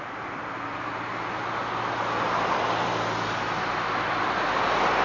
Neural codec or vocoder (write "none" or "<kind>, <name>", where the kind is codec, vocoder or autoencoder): none